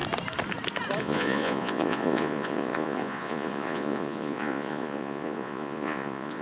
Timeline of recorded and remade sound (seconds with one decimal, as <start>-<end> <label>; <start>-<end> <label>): 0.0-1.0 recorded; 1.0-6.4 remade